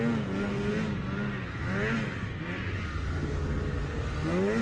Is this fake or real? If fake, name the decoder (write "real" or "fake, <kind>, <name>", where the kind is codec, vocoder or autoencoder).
real